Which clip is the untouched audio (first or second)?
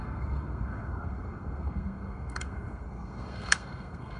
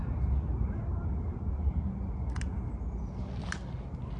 second